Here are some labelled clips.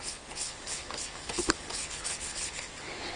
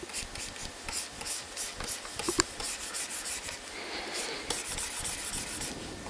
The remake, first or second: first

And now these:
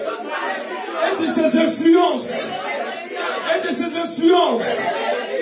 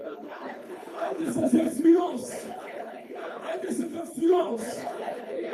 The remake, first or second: second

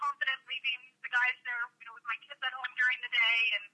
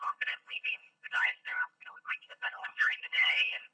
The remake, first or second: second